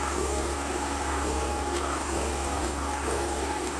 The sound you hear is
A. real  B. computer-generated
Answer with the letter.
B